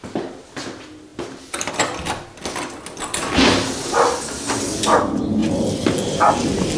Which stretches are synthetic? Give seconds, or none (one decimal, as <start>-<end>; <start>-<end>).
5.4-6.3